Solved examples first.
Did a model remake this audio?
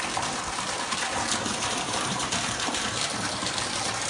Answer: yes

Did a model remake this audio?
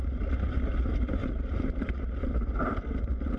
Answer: yes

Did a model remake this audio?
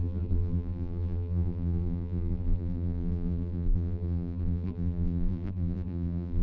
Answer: yes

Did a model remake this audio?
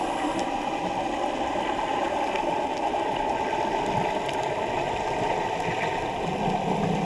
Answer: no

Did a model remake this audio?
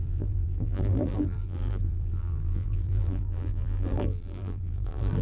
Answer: yes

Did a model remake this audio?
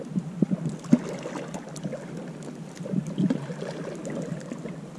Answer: no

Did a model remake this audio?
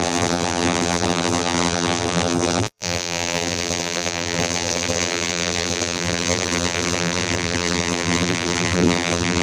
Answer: yes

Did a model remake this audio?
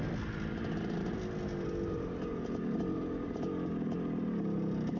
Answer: no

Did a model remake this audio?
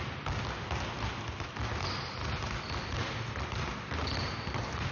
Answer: no